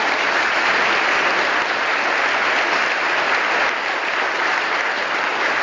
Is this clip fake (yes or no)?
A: no